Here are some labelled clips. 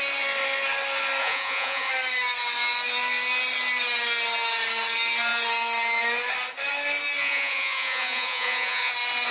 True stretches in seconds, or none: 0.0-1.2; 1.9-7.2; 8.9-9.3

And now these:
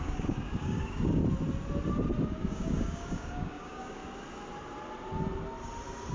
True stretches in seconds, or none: 1.2-2.3; 4.0-6.1

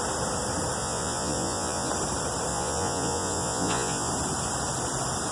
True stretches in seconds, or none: 0.0-0.8; 1.9-2.5; 4.1-5.3

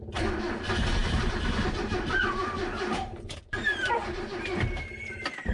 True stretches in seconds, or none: 0.0-1.0; 3.6-5.5

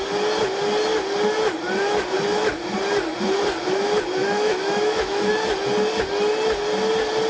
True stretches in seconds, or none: 0.0-4.2; 5.3-7.3

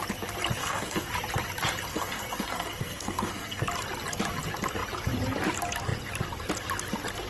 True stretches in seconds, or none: 0.0-0.6; 1.1-1.9; 3.6-7.3